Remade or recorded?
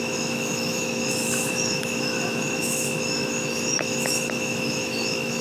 remade